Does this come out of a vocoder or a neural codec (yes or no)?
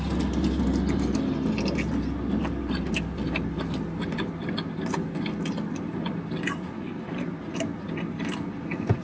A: no